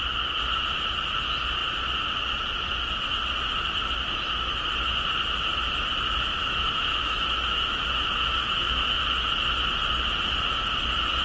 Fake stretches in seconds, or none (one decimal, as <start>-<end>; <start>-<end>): 6.3-9.0